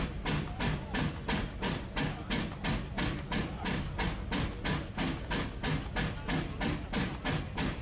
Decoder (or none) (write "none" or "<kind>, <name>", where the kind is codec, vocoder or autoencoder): none